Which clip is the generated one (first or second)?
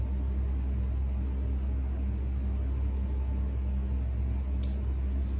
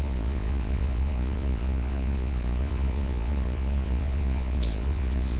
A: second